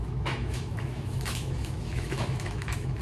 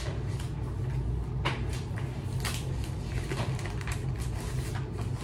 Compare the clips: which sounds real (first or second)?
second